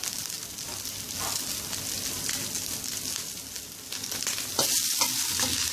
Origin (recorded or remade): recorded